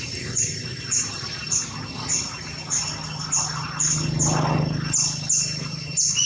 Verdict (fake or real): real